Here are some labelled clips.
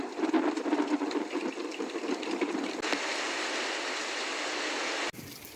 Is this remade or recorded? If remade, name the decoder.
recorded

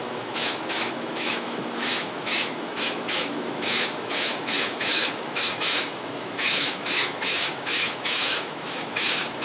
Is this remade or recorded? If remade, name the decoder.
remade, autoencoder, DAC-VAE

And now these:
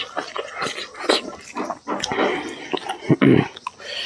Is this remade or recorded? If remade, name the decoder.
recorded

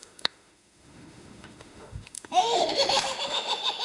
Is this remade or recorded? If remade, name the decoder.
remade, autoencoder, DAC-VAE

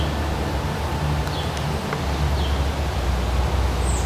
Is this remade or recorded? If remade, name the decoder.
recorded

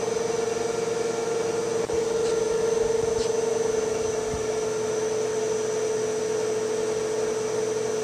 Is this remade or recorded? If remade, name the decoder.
recorded